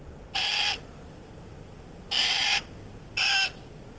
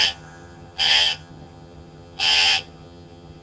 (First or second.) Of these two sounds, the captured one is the first